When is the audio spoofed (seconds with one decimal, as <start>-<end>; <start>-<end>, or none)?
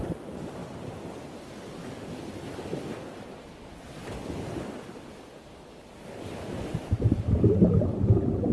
none